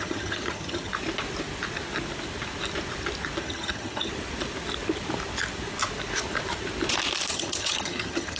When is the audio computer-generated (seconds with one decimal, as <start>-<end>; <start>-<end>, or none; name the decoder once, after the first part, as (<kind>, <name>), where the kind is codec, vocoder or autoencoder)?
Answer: 0.0-0.9 (vocoder, HiFi-GAN); 3.4-4.1; 7.3-8.4